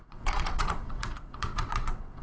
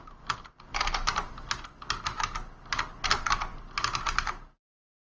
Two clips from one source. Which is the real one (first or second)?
second